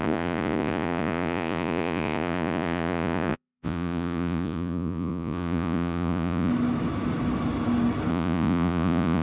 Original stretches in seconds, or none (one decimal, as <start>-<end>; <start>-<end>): 6.5-8.1